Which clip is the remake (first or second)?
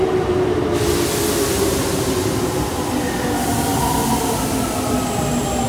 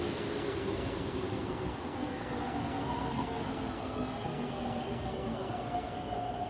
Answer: second